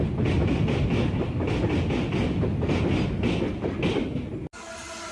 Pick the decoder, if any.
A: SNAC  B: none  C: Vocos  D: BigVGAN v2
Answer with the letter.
B